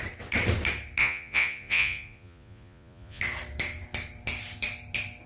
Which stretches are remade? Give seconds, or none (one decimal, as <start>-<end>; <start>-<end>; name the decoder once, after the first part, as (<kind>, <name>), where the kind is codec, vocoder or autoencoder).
1.0-3.2 (vocoder, Vocos)